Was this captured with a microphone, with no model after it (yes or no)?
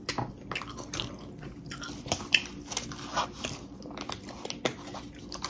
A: yes